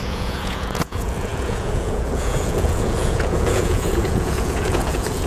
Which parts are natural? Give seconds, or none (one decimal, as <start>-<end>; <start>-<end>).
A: none